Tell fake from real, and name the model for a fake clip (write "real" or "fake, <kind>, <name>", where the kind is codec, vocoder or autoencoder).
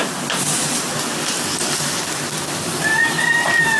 real